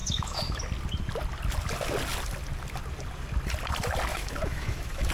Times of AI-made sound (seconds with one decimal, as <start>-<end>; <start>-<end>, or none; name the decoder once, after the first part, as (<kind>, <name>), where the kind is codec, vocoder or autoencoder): 0.0-0.6 (autoencoder, DAC-VAE); 4.1-5.1

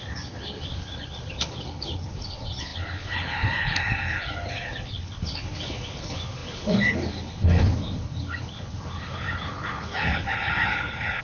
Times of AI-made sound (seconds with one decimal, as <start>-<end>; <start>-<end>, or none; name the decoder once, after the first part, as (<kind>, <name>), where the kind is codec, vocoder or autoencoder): 0.0-11.2 (codec, HILCodec)

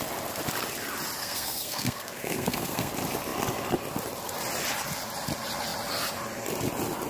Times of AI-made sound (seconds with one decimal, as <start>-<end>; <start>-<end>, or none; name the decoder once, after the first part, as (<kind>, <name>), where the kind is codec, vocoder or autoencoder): 1.2-2.9 (codec, SNAC)

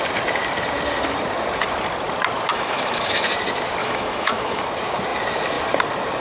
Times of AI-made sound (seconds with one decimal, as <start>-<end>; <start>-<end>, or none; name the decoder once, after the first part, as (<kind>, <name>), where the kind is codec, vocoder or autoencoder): 2.5-3.3 (autoencoder, DAC-VAE); 3.8-4.6

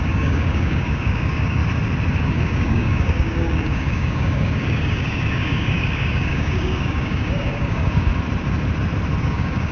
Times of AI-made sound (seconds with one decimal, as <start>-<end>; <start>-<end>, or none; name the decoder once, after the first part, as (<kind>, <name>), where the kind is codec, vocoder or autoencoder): 0.0-1.6 (codec, DAC); 2.2-8.1; 9.2-9.7

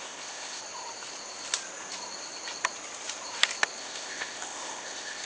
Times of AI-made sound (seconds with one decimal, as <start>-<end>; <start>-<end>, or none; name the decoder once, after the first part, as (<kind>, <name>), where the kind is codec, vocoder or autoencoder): 0.0-0.6 (codec, ZipCodec); 3.8-5.3

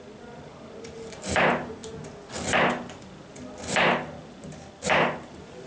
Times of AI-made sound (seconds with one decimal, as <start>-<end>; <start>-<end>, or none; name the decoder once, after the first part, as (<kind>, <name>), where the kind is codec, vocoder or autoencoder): none

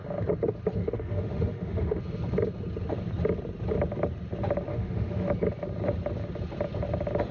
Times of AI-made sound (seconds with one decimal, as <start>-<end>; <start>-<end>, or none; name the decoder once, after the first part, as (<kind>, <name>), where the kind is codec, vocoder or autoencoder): 0.8-2.0 (autoencoder, DAC-VAE); 4.7-5.3